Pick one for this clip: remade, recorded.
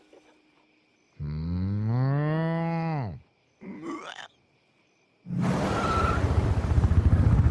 recorded